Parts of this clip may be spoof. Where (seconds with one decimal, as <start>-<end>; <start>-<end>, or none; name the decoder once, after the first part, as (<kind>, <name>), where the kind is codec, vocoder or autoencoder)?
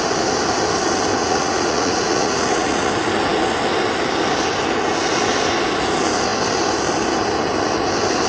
1.2-2.9 (vocoder, Vocos)